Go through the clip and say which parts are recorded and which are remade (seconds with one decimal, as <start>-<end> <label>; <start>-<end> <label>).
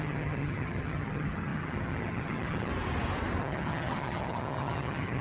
0.0-2.7 remade; 2.7-3.4 recorded; 3.4-5.2 remade